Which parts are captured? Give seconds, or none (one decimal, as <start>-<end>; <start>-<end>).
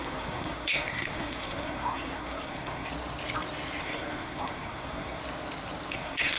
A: 2.9-3.8; 5.2-5.9